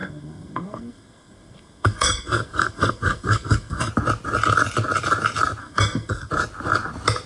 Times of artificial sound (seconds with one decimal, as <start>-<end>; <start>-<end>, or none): 0.0-3.9; 5.6-6.3